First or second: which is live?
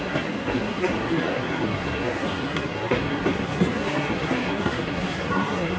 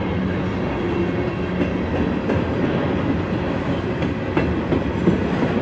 second